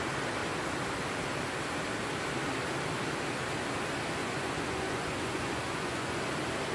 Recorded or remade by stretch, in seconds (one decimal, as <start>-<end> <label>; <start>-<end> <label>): 0.0-4.2 recorded; 4.2-6.2 remade; 6.2-6.7 recorded